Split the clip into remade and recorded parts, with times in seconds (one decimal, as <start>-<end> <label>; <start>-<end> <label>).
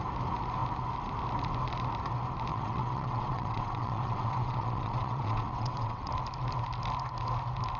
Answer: 0.0-2.5 recorded; 2.5-6.1 remade; 6.1-7.8 recorded